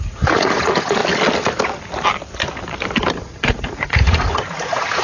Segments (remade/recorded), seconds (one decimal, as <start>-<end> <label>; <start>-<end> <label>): 0.0-1.0 remade; 1.0-3.1 recorded; 3.1-5.0 remade